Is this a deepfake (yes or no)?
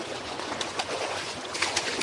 yes